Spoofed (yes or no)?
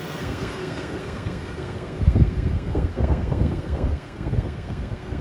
yes